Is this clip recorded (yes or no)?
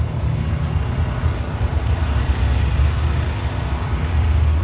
no